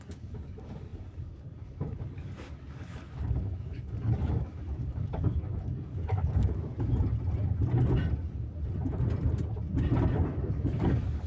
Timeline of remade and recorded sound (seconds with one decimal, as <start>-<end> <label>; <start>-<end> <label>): 0.0-6.7 remade; 6.7-10.3 recorded; 10.3-11.3 remade